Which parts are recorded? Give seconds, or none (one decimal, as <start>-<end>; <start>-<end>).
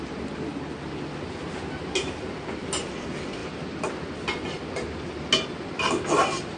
0.0-6.6